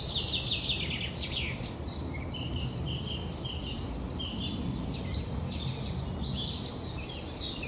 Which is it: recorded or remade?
recorded